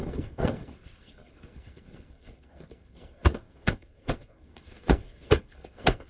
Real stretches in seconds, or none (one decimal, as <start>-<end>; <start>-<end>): none